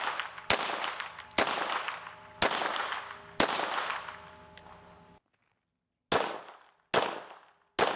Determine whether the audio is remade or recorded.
recorded